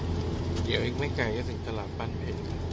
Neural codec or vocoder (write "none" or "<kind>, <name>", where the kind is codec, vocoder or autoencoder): none